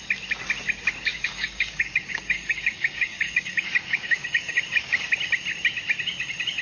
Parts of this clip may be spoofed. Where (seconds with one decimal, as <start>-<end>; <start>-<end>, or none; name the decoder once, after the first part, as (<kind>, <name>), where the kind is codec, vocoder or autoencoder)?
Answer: 1.1-5.1 (codec, DAC)